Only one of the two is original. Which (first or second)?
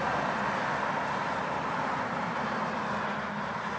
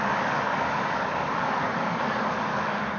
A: first